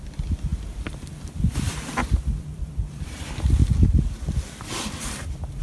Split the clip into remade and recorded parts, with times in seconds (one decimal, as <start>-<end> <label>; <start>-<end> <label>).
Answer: 0.0-3.6 remade; 3.6-5.6 recorded